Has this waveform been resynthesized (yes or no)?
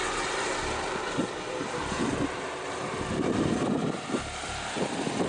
no